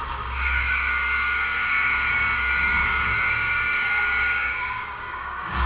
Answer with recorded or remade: remade